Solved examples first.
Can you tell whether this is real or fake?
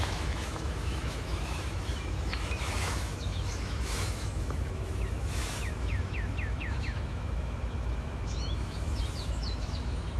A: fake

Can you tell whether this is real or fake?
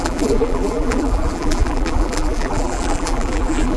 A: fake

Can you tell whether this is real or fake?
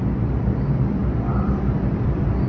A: fake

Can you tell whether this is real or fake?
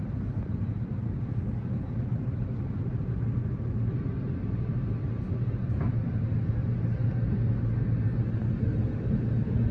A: real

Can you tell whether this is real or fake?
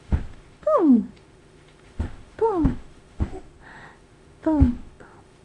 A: fake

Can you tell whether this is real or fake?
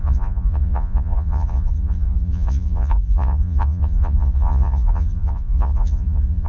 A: fake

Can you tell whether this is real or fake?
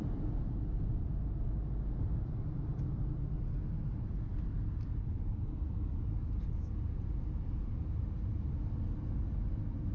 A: real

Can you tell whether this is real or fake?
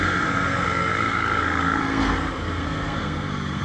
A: fake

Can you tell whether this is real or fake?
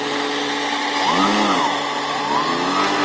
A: real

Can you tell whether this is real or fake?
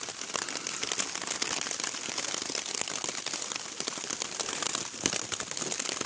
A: real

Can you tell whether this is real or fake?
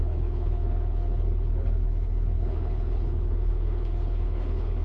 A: fake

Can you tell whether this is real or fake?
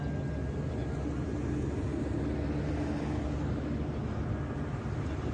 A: real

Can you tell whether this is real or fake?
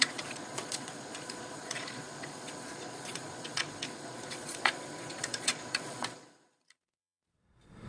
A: fake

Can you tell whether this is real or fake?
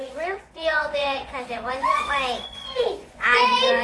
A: fake